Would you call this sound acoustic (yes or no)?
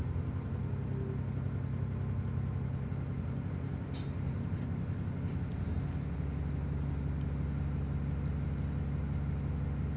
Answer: yes